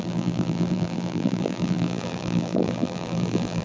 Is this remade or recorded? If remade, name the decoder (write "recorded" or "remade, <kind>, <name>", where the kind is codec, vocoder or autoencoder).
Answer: remade, vocoder, BigVGAN v2